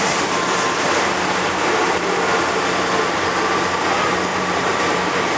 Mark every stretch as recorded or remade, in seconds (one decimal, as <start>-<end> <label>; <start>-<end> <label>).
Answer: 0.0-4.3 recorded; 4.3-5.0 remade; 5.0-5.4 recorded